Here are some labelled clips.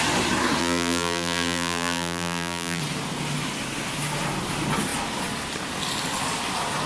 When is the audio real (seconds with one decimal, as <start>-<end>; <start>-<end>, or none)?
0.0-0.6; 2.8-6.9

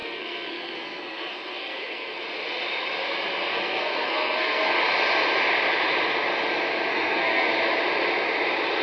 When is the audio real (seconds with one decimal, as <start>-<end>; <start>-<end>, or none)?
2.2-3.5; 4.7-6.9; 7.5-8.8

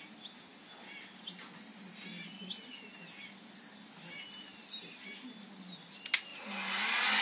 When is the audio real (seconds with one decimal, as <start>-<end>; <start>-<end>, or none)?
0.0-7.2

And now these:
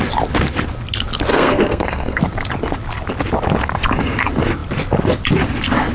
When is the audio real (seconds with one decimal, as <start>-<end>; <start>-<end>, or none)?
0.0-1.3; 2.2-5.9

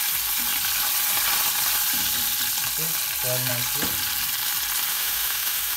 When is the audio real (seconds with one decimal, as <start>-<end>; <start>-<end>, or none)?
0.0-4.9

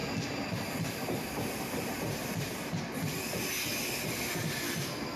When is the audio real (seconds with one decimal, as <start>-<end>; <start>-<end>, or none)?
0.0-5.2